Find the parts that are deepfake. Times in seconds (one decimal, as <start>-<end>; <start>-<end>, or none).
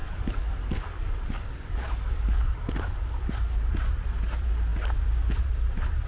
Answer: 0.0-3.7